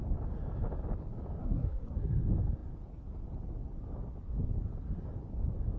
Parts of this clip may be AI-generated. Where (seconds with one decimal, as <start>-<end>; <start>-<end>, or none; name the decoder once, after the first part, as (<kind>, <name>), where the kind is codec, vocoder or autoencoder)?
1.4-2.2 (codec, SNAC)